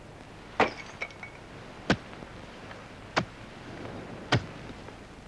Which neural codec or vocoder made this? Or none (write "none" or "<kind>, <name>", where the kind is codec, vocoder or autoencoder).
none